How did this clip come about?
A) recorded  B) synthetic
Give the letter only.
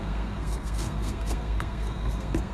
B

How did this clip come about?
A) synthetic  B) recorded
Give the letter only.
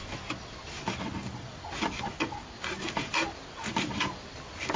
B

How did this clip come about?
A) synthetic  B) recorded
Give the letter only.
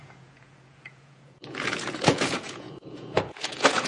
A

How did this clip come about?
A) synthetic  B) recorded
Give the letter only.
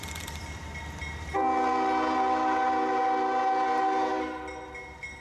B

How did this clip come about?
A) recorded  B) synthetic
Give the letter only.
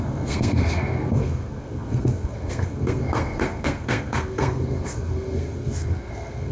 B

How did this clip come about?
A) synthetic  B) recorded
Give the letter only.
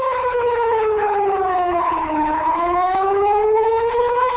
A